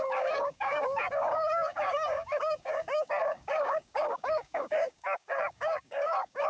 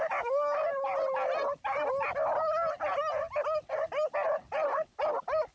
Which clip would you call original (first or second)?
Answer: second